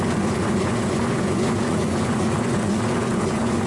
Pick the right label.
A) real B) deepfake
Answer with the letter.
B